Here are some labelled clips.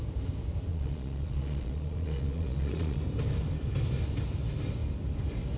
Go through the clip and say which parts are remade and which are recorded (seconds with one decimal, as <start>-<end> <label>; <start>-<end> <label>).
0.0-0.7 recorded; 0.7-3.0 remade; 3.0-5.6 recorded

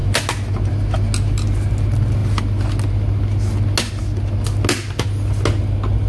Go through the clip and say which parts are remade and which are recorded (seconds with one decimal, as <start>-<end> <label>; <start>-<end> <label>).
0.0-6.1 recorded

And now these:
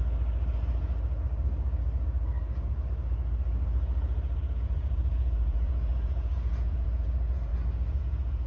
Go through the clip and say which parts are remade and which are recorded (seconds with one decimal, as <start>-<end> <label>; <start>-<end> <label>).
0.0-4.4 recorded; 4.4-7.5 remade; 7.5-8.0 recorded; 8.0-8.5 remade

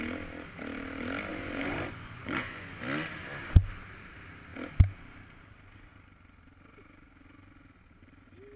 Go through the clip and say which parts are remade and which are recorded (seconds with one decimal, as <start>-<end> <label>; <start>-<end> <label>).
0.0-1.3 recorded; 1.3-2.8 remade; 2.8-8.6 recorded

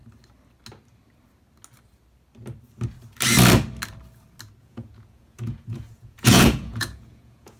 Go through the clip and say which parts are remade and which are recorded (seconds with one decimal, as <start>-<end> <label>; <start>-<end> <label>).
0.0-4.6 recorded; 4.6-7.6 remade

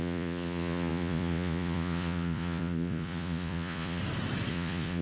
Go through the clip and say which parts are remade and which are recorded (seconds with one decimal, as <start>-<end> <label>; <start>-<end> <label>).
0.0-4.0 remade; 4.0-4.5 recorded; 4.5-5.0 remade

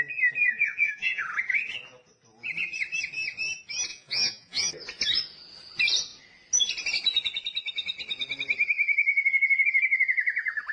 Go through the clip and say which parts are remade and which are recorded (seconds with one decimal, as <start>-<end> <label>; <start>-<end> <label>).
0.0-0.4 recorded; 0.4-1.2 remade; 1.2-3.9 recorded; 3.9-4.7 remade; 4.7-10.7 recorded